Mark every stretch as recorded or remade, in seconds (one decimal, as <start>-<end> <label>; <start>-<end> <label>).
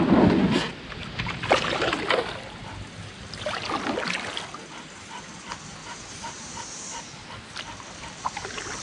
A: 0.0-8.8 recorded